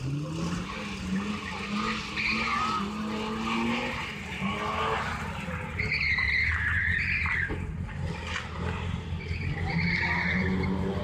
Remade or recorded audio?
recorded